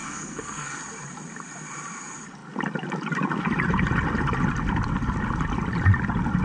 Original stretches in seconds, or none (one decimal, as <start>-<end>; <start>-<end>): 0.8-6.4